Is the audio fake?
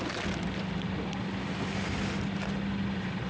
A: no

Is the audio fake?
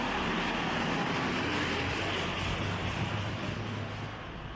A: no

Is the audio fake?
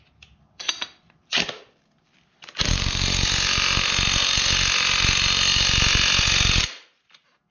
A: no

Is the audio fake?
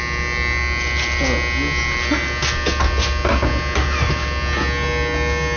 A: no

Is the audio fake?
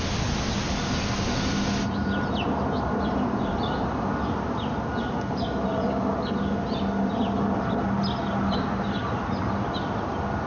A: no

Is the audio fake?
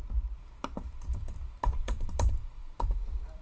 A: yes